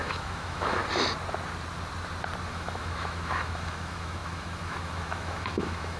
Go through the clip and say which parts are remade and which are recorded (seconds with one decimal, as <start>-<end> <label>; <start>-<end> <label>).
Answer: 0.0-0.8 remade; 0.8-2.5 recorded; 2.5-6.0 remade